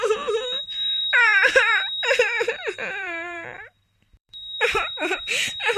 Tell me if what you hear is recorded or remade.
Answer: remade